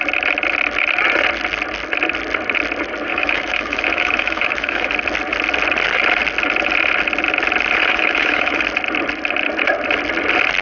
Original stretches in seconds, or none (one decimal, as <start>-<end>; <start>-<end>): 0.0-3.1; 4.9-7.9; 8.6-10.6